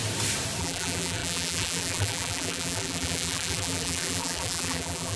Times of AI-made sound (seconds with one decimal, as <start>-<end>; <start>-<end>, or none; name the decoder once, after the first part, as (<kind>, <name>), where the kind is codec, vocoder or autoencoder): 0.6-5.2 (vocoder, BigVGAN v2)